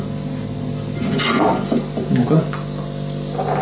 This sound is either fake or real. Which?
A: real